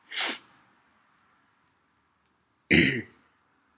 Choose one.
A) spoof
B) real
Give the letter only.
B